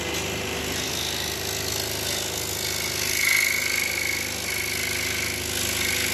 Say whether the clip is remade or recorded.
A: recorded